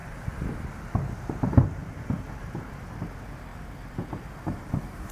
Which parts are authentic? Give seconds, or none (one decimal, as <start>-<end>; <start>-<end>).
0.5-1.8; 3.1-5.1